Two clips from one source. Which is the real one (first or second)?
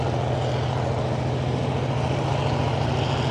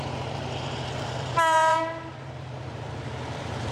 first